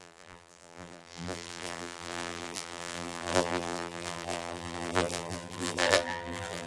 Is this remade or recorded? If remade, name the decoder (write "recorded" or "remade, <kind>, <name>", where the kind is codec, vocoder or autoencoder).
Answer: remade, vocoder, BigVGAN v2